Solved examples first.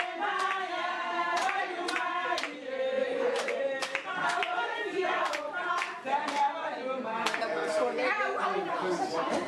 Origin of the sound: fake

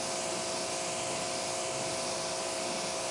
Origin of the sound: real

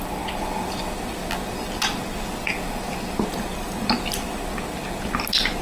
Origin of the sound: real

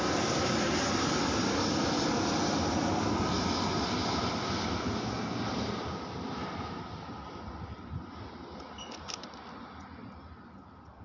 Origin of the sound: real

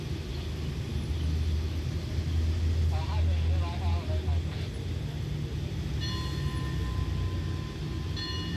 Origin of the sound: real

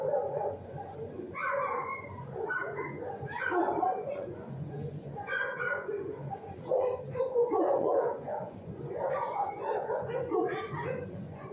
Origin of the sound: fake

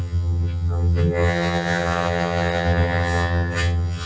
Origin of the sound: fake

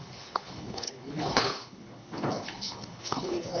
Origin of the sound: fake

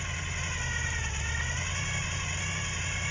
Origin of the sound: real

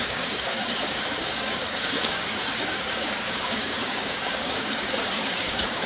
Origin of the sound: fake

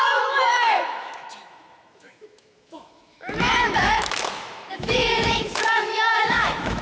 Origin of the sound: fake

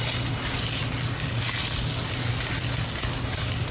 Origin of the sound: real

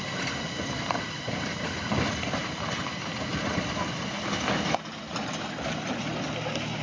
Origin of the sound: real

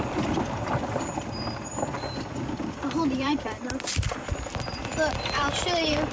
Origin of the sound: fake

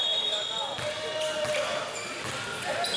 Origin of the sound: real